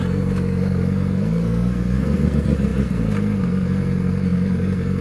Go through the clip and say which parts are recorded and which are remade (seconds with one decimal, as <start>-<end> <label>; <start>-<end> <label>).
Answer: 0.0-5.0 remade